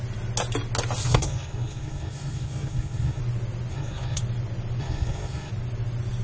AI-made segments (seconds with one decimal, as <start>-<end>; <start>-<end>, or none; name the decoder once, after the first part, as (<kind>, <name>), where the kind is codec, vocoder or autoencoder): 1.0-3.2 (codec, SNAC); 3.7-4.2; 4.8-5.5